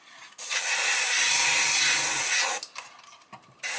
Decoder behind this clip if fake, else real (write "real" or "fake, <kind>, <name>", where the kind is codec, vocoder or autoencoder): real